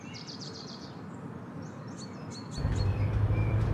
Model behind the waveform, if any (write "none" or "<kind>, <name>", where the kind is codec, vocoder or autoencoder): none